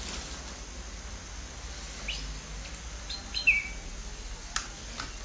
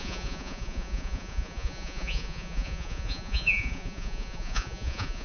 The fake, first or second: second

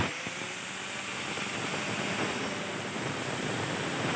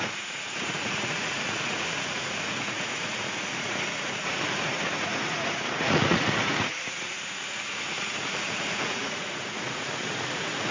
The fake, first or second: second